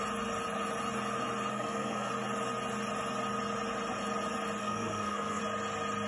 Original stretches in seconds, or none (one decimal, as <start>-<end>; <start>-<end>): 0.0-1.5; 2.1-4.6; 5.4-6.1